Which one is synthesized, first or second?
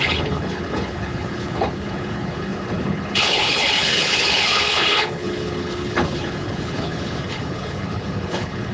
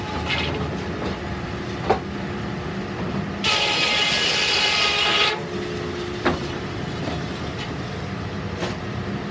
first